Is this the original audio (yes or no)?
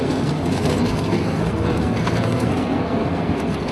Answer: no